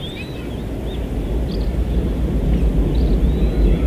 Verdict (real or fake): real